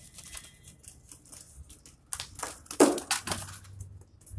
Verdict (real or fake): real